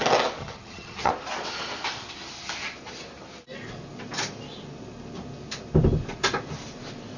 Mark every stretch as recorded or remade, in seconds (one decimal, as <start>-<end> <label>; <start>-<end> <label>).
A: 0.0-0.4 recorded; 0.4-1.1 remade; 1.1-7.2 recorded

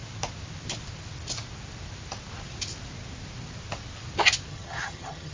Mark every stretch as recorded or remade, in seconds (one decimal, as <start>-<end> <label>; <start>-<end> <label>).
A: 0.0-4.5 recorded; 4.5-5.3 remade

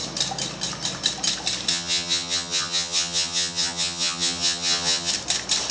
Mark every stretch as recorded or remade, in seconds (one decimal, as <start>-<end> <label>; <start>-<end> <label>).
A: 0.0-1.7 recorded; 1.7-5.1 remade; 5.1-5.7 recorded

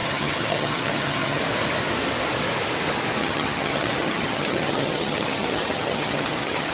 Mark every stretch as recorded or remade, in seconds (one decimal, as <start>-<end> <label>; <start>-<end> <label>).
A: 0.0-1.4 remade; 1.4-3.2 recorded; 3.2-6.7 remade

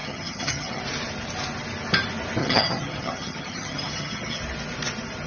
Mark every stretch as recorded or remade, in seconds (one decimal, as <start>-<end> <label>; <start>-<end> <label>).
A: 0.0-0.8 remade; 0.8-2.4 recorded; 2.4-4.4 remade; 4.4-5.3 recorded